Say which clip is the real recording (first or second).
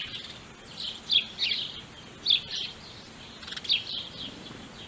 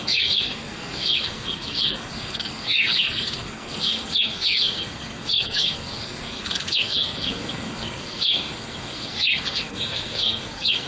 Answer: first